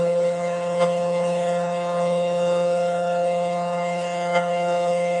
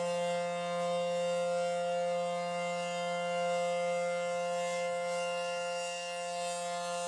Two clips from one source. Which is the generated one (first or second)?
first